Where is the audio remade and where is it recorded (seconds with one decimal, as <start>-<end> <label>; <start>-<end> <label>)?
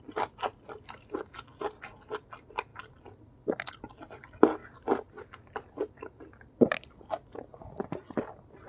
0.0-8.7 recorded